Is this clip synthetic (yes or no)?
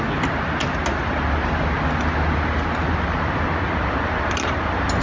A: no